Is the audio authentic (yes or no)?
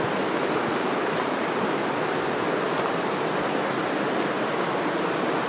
yes